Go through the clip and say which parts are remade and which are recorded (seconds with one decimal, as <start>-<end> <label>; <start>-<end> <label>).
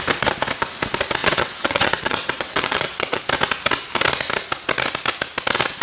0.0-1.2 recorded; 1.2-3.2 remade; 3.2-5.8 recorded